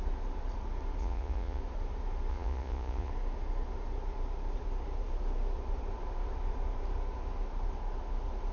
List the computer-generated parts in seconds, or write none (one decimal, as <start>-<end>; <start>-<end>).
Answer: 1.0-1.6; 2.3-3.1